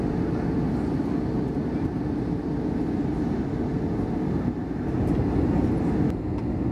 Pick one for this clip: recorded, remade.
recorded